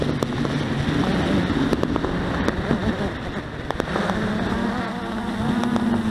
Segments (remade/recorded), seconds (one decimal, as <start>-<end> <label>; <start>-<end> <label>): 0.0-6.1 recorded